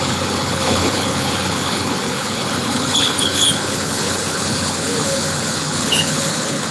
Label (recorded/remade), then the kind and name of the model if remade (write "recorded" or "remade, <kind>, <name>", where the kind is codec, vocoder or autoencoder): remade, codec, HILCodec